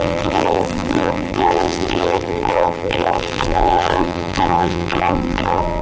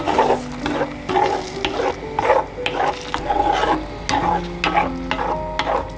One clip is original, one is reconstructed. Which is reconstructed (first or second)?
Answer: first